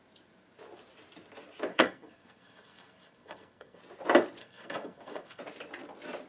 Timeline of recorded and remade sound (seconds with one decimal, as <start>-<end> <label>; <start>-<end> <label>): 0.0-1.7 recorded; 1.7-3.8 remade; 3.8-4.4 recorded; 4.4-5.4 remade; 5.4-6.3 recorded